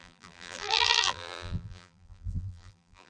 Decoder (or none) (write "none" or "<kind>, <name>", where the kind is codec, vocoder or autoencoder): vocoder, BigVGAN v2